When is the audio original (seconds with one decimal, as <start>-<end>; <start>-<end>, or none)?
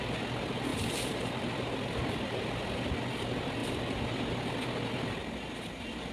0.0-0.7; 2.9-6.1